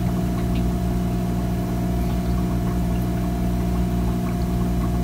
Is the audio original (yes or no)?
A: yes